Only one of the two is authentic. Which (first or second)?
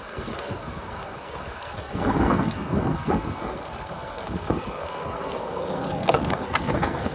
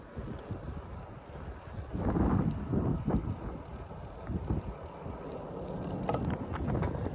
second